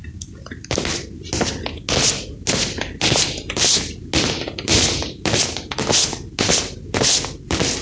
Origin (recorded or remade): recorded